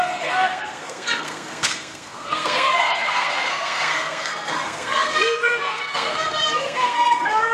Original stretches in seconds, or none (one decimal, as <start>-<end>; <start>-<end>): none